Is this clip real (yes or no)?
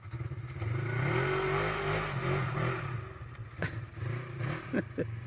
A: yes